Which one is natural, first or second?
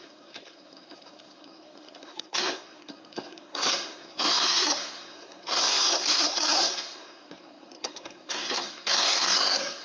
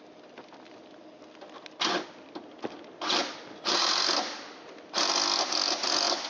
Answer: second